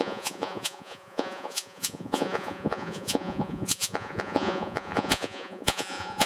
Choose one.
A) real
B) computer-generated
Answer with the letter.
B